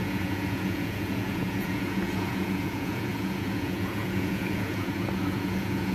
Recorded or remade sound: remade